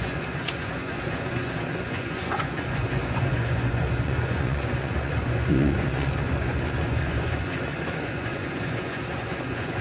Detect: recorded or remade remade